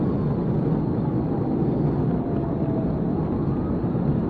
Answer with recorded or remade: recorded